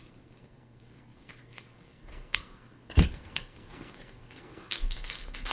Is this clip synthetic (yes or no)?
yes